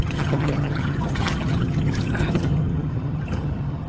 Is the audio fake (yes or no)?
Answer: yes